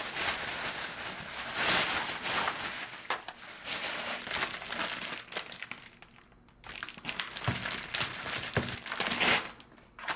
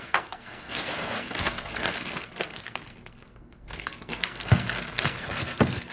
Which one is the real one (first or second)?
first